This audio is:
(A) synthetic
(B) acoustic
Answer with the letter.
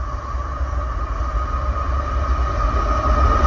B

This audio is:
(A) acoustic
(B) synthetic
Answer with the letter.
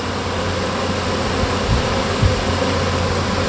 A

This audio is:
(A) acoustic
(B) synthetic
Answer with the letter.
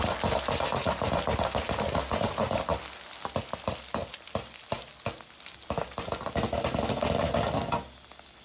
A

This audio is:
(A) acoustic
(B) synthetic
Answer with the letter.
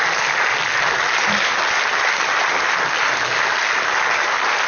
A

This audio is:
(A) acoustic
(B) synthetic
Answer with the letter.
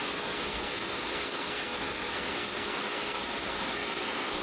B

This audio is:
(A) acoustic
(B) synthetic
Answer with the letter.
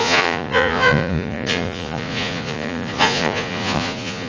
B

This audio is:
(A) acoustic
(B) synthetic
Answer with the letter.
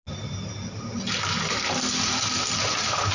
A